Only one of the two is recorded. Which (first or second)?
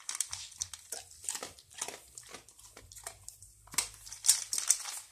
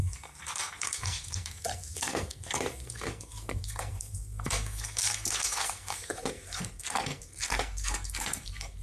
first